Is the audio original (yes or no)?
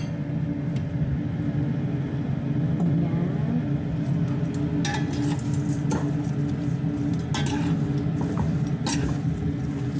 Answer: yes